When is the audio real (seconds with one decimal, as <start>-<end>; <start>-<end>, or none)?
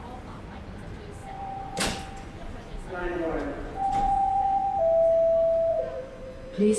0.0-1.2; 4.8-5.7